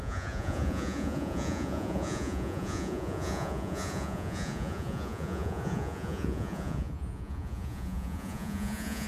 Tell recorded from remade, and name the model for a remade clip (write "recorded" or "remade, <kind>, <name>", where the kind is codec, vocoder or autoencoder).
remade, vocoder, Vocos